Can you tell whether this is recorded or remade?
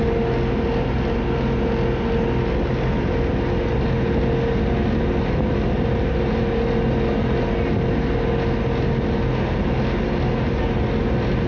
recorded